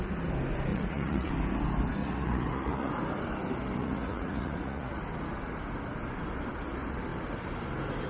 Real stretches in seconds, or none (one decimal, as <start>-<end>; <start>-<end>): 0.0-0.7; 1.3-2.0; 2.9-3.8; 5.0-8.1